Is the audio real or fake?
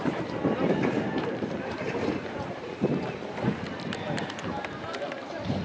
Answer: fake